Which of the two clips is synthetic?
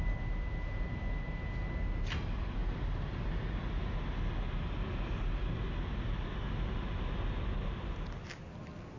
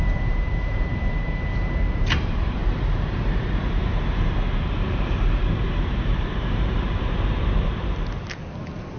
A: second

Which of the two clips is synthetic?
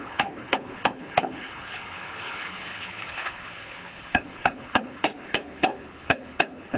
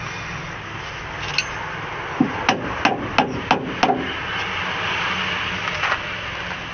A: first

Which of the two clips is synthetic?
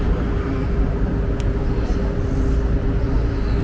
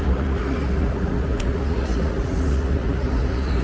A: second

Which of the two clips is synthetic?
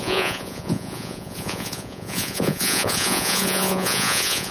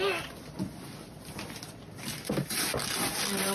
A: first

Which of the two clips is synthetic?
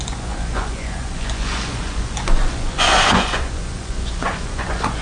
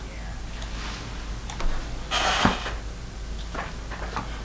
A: first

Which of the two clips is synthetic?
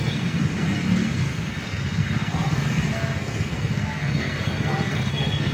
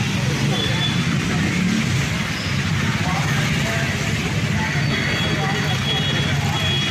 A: first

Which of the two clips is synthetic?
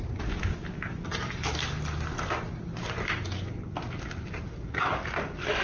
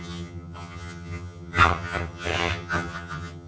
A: second